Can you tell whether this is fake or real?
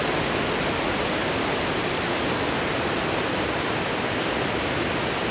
real